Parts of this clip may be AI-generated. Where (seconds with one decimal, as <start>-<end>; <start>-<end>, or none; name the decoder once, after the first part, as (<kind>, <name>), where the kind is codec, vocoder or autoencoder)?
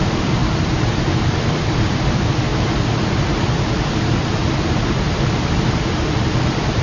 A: 0.0-4.4 (vocoder, BigVGAN v2); 4.9-6.8